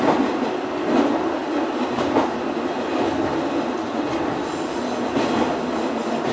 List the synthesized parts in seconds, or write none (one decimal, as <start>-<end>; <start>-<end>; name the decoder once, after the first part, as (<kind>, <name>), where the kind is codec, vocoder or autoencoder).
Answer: none